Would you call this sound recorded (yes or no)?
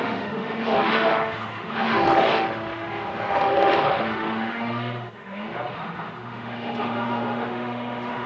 no